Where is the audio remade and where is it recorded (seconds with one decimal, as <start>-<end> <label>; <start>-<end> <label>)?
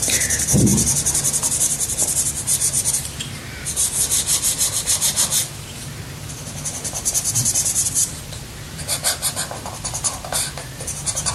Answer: 0.0-3.4 remade; 3.4-4.1 recorded; 4.1-11.3 remade